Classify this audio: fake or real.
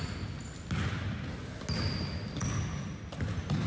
real